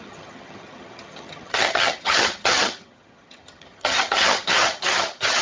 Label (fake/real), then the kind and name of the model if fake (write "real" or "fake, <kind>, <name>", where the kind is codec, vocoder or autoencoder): fake, vocoder, HiFi-GAN